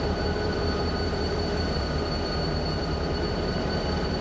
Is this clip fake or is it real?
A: fake